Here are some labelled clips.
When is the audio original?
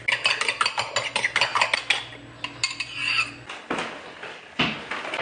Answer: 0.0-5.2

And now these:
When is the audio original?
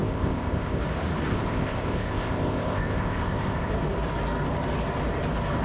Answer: 0.8-1.3; 3.7-5.6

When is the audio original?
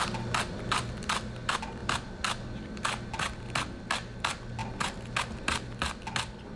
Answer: 0.0-6.6